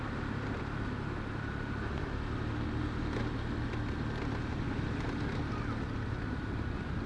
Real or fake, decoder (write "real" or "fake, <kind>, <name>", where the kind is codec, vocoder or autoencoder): real